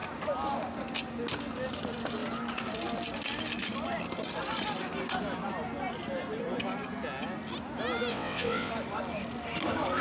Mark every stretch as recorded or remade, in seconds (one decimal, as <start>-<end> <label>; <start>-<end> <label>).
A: 0.0-8.1 recorded; 8.1-8.7 remade; 8.7-10.0 recorded